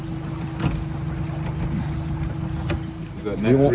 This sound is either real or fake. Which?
real